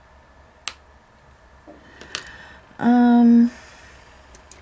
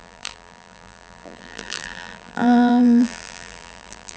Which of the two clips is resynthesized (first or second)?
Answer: second